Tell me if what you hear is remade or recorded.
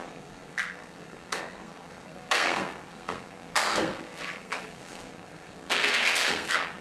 remade